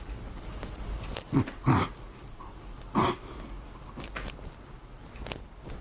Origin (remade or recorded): recorded